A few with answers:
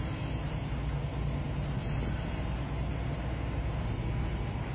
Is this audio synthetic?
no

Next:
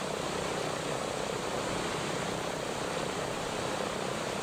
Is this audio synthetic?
yes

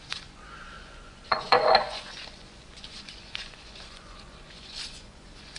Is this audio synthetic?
yes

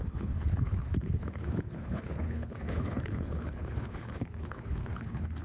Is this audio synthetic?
yes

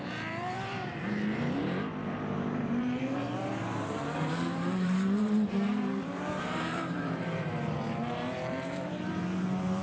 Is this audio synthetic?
yes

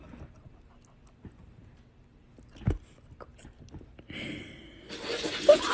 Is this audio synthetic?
no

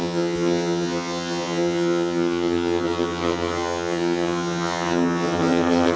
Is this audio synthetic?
yes